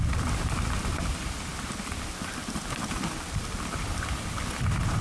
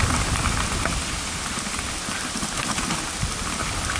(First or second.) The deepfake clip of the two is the first